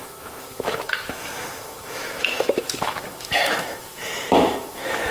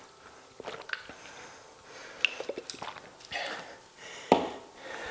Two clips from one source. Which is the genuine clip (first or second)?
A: second